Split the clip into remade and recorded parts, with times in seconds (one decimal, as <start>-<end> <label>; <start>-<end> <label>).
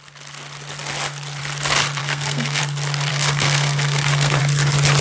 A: 0.0-2.0 recorded; 2.0-2.6 remade; 2.6-3.1 recorded; 3.1-4.4 remade; 4.4-5.0 recorded